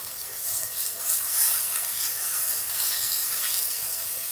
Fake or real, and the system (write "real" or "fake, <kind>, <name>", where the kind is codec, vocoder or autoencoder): fake, codec, SNAC